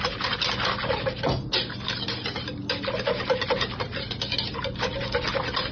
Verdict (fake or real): real